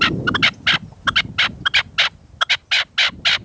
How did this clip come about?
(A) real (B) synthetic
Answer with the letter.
A